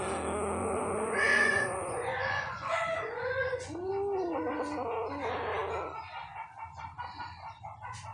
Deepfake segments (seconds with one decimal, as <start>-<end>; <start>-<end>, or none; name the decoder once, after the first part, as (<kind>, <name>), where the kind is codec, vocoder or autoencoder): 0.6-3.9 (vocoder, Vocos)